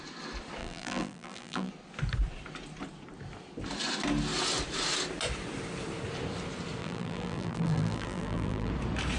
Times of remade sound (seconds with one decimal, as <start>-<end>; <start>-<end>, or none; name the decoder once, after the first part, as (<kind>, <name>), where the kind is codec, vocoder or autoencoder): 0.6-1.7 (vocoder, BigVGAN v2); 6.8-8.7